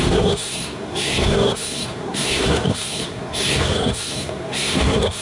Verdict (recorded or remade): remade